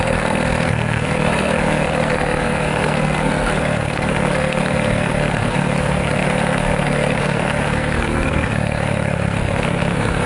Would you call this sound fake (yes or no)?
yes